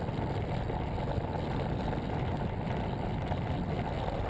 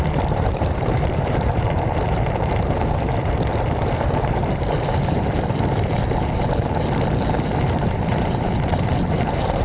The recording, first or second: first